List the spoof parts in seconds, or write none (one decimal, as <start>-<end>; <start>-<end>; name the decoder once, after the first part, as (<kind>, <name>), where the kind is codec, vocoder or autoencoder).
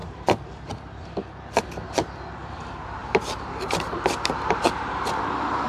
3.0-5.2 (vocoder, BigVGAN v2)